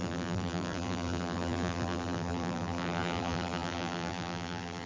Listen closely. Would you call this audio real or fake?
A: fake